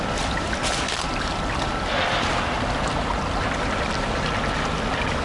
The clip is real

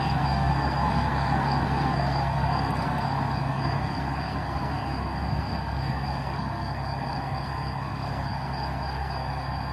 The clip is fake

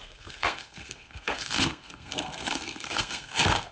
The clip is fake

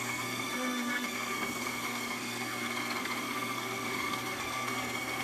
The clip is fake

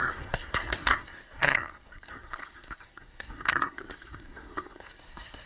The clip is fake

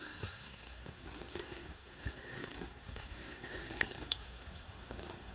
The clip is fake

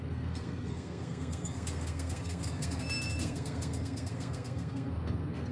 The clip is fake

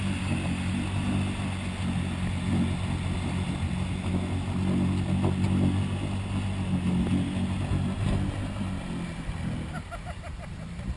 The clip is real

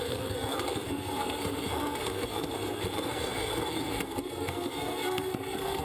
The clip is fake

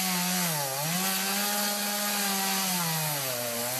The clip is real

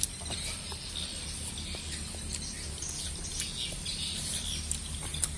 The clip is real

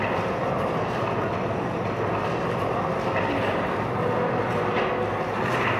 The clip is real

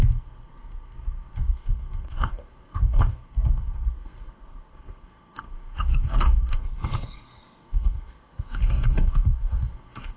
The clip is fake